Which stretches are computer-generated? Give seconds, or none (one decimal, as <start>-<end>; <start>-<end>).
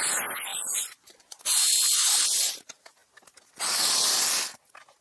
0.5-1.4